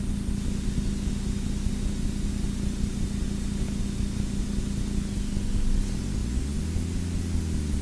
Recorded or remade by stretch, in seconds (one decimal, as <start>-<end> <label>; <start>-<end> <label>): 0.0-7.8 recorded